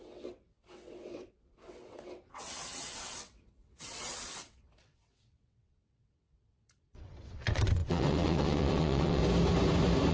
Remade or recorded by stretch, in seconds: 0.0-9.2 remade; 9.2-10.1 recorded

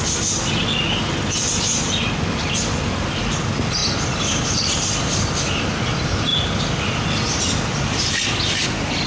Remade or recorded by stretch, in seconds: 0.0-9.1 recorded

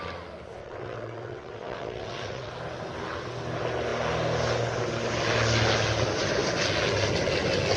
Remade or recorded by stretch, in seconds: 0.0-0.6 recorded; 0.6-2.5 remade; 2.5-7.8 recorded

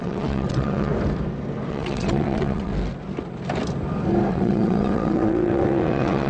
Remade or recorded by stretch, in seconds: 0.0-0.9 remade; 0.9-1.7 recorded; 1.7-2.7 remade; 2.7-4.3 recorded; 4.3-6.3 remade